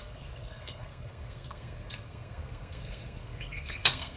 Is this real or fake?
fake